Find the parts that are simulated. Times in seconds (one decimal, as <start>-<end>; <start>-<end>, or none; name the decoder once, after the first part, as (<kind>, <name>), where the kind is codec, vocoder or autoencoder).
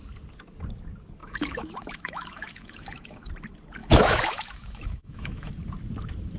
1.2-3.3 (autoencoder, DAC-VAE); 3.8-5.5